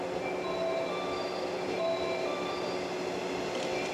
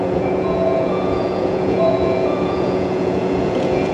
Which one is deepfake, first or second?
second